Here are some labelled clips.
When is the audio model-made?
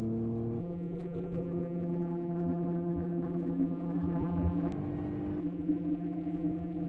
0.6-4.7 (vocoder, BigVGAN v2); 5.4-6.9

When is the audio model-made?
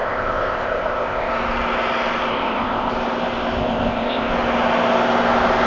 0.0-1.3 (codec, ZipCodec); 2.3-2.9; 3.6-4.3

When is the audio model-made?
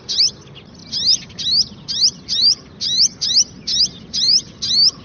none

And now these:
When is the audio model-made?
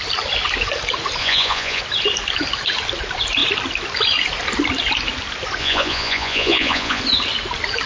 1.2-1.8 (vocoder, Vocos); 5.6-7.0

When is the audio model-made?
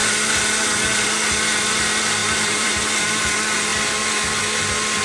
2.2-2.7 (vocoder, BigVGAN v2)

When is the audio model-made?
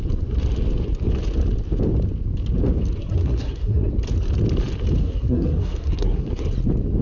3.0-3.9 (codec, SNAC); 5.0-6.4